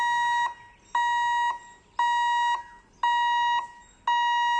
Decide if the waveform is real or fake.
real